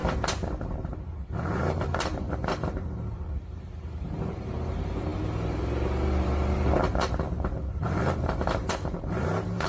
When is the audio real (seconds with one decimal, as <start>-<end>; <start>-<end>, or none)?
0.0-2.3